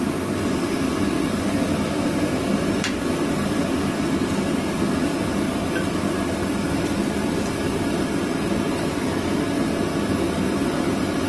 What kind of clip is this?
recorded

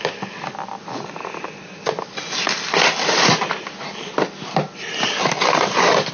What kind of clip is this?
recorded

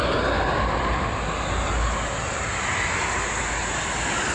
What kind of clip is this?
recorded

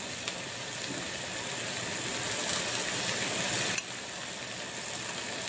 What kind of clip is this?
recorded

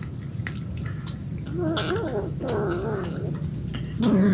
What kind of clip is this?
recorded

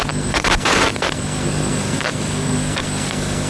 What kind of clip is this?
remade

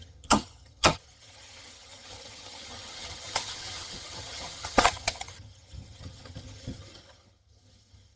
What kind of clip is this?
remade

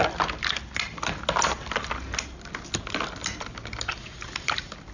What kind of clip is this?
recorded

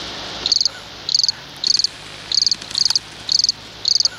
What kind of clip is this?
recorded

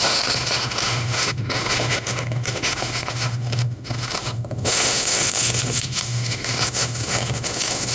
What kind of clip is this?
remade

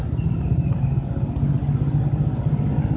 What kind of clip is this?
recorded